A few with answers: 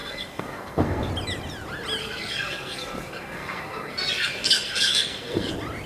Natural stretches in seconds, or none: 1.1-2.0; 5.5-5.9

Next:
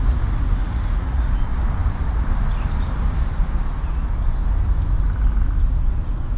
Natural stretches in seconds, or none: 0.0-0.6; 1.4-6.4

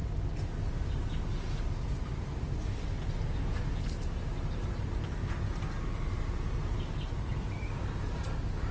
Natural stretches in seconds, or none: 0.0-8.7

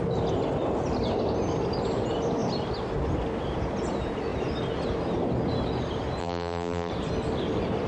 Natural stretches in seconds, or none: 0.0-6.2; 6.9-7.9